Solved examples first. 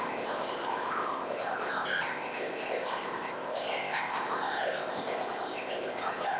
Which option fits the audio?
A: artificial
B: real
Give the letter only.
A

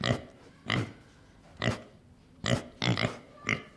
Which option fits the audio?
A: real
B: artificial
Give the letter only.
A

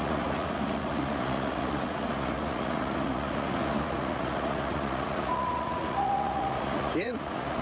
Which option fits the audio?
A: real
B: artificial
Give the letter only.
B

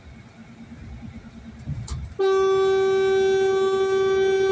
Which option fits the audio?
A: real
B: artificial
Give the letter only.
A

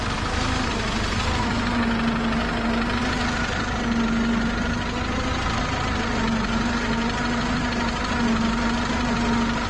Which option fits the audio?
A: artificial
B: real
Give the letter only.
B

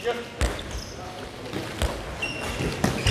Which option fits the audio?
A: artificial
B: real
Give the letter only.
B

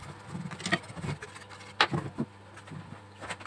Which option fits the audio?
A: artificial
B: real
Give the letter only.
B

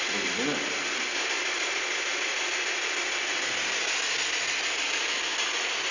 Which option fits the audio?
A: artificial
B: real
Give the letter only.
B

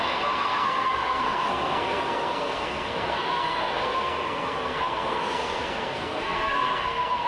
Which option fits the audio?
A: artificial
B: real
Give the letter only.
A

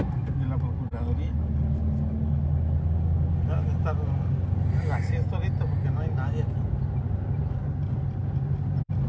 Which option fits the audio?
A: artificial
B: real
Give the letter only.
B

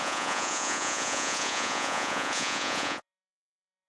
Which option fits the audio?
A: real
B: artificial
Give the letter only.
B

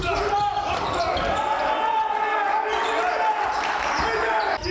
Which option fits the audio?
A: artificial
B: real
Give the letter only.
B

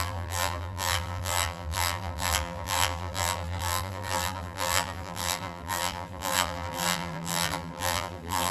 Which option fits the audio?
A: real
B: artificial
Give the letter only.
B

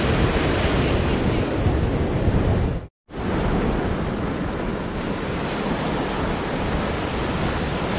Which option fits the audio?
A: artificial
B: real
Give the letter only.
B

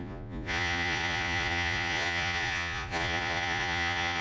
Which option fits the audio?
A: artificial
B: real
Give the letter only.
A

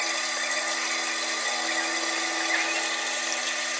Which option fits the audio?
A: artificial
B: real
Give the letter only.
B